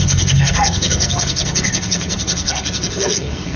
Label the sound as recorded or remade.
remade